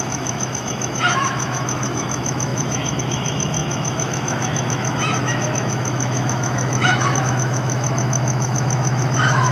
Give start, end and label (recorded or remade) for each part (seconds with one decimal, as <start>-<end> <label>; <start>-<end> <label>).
0.0-9.5 remade